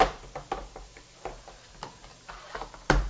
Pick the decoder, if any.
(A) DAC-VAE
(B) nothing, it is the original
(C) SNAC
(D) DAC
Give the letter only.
B